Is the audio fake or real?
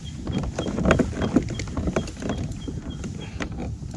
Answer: fake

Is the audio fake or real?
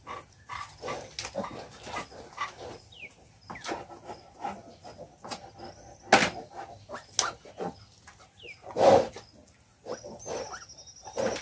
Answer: real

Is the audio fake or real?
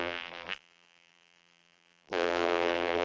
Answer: fake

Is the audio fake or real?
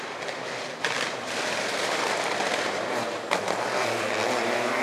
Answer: fake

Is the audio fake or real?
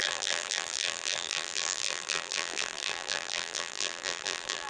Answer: fake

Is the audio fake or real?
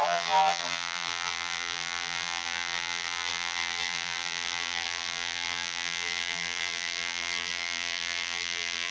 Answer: fake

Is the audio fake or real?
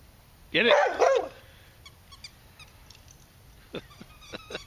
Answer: real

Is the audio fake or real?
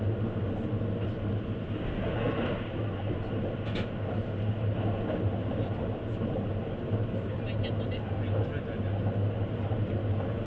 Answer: real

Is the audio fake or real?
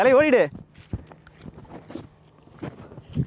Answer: real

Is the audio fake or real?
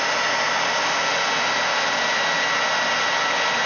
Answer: real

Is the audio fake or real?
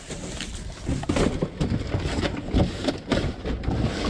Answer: real